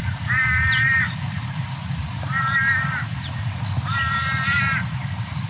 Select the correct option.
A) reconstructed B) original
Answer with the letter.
A